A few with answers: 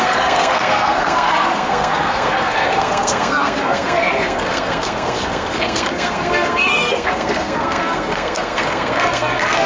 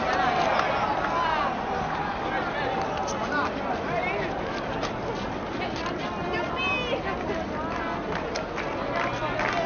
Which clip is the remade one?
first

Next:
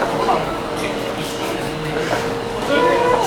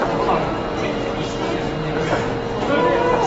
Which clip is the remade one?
first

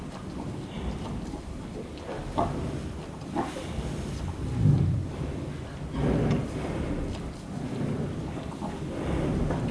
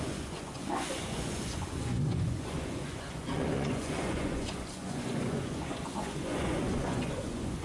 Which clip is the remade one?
second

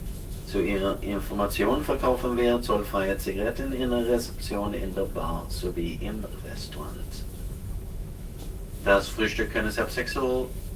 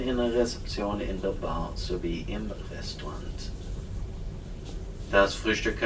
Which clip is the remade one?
first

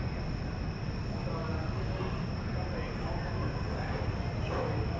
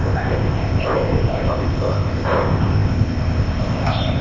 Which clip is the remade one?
second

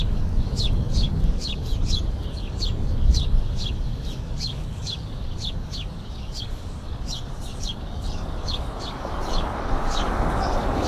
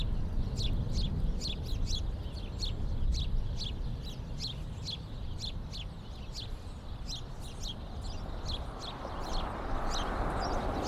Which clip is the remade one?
first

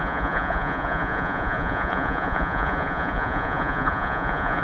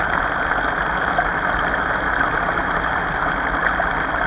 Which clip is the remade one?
first